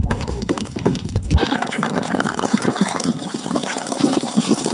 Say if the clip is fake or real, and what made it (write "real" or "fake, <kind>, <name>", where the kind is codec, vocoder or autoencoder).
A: fake, codec, SNAC